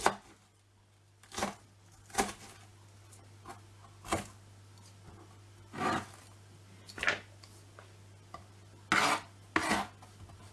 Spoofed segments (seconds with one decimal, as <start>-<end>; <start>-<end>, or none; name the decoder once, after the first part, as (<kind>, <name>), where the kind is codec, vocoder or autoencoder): none